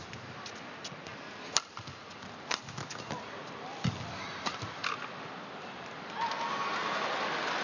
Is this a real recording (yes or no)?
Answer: yes